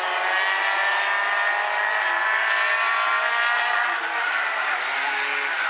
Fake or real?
real